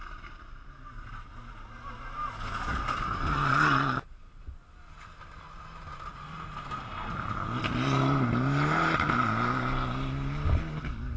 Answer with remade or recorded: recorded